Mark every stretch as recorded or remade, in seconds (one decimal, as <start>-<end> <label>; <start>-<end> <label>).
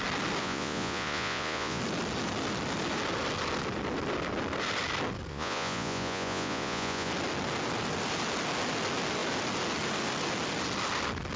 0.0-0.4 recorded; 0.4-1.8 remade; 1.8-5.3 recorded; 5.3-7.1 remade; 7.1-11.4 recorded